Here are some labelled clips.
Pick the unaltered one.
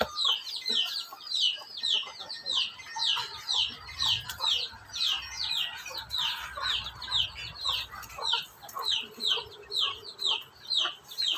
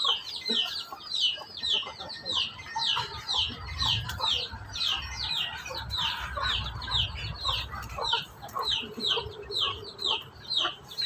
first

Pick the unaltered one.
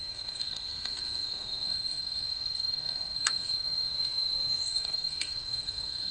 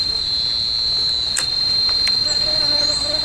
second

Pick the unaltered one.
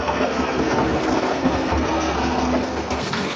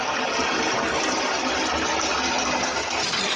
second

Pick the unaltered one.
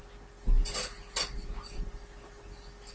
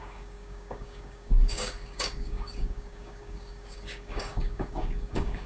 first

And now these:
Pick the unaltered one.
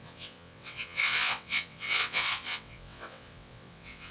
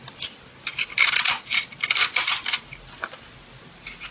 second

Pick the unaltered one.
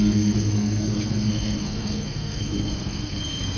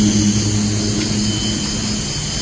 second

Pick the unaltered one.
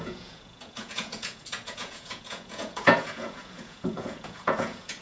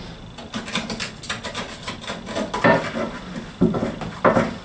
second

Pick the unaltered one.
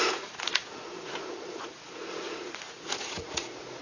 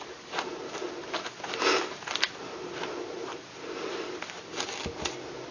second